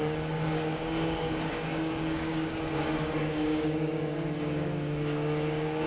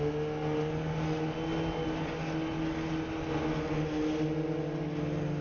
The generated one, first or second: first